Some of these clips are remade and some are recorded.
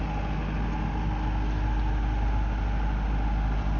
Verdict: recorded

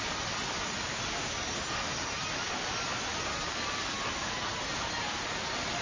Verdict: recorded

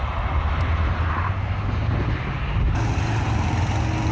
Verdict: recorded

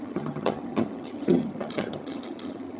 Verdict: remade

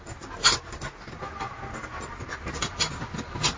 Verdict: recorded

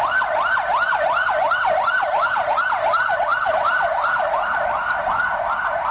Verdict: recorded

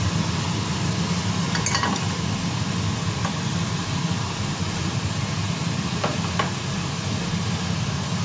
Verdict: recorded